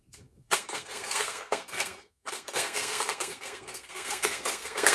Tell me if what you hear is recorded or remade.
remade